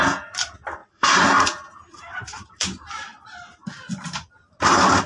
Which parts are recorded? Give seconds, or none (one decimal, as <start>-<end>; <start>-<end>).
0.0-0.8; 3.9-5.1